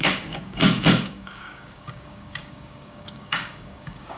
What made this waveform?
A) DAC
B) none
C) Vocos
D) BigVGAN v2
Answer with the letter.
A